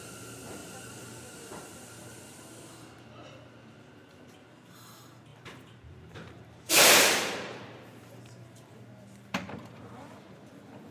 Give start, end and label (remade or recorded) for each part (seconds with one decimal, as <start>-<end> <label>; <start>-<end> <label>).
0.0-0.6 recorded; 0.6-2.0 remade; 2.0-5.3 recorded; 5.3-9.9 remade; 9.9-10.9 recorded